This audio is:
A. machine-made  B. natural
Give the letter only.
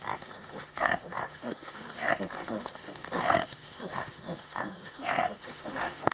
A